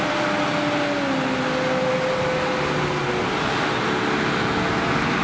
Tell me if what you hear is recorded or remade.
recorded